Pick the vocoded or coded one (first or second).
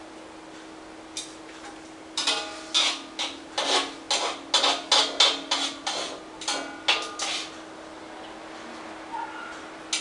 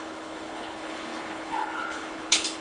second